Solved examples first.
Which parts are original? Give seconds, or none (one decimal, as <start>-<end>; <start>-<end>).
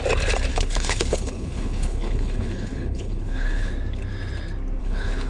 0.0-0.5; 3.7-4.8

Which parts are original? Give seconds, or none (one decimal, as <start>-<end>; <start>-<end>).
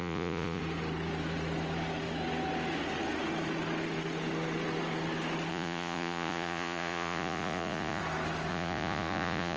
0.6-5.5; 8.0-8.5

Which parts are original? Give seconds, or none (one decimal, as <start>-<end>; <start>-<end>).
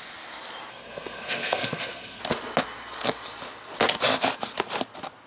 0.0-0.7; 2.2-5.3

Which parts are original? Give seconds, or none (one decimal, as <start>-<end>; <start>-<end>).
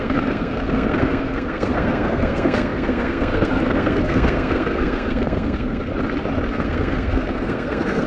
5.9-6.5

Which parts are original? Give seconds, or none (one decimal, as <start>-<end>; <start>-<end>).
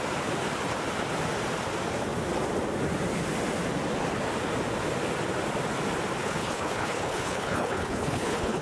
0.0-6.2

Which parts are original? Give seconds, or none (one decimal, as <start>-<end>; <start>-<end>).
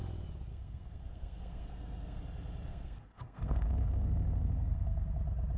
0.0-0.5; 2.2-2.7; 5.1-5.6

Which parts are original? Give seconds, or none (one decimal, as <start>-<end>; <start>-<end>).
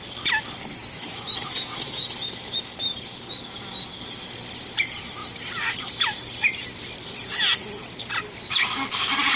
0.0-0.8; 2.1-9.4